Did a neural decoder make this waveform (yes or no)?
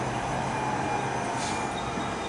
no